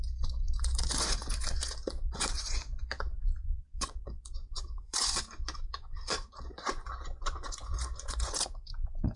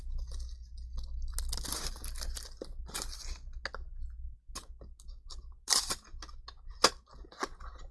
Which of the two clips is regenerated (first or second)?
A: first